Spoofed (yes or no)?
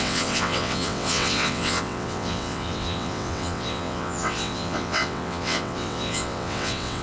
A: yes